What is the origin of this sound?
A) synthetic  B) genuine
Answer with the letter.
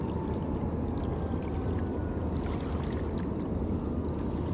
B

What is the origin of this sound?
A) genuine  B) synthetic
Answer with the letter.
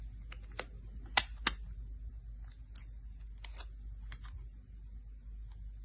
A